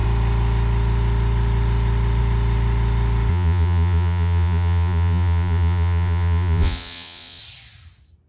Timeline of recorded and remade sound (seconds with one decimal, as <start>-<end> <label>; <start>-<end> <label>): 0.0-3.3 recorded; 3.3-7.4 remade; 7.4-8.3 recorded